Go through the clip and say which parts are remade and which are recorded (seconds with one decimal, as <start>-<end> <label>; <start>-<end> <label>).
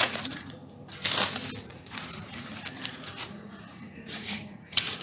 0.0-0.6 remade; 0.6-1.6 recorded; 1.6-2.3 remade; 2.3-2.9 recorded; 2.9-5.0 remade